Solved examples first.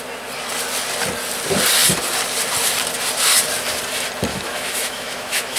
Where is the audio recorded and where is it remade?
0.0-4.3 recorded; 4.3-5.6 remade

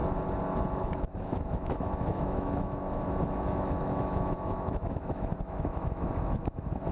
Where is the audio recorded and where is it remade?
0.0-0.7 recorded; 0.7-6.9 remade

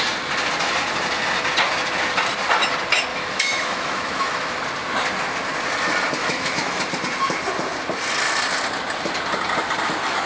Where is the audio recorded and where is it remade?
0.0-3.1 recorded; 3.1-4.6 remade; 4.6-6.2 recorded; 6.2-6.8 remade; 6.8-10.3 recorded

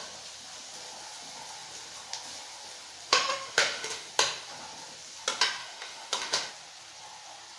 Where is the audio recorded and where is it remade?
0.0-3.1 recorded; 3.1-4.1 remade; 4.1-5.6 recorded; 5.6-6.5 remade; 6.5-7.6 recorded

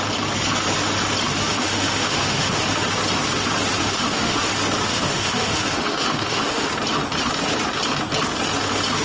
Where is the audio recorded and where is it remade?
0.0-1.4 recorded; 1.4-2.6 remade; 2.6-3.8 recorded; 3.8-4.5 remade; 4.5-4.9 recorded; 4.9-6.7 remade; 6.7-9.0 recorded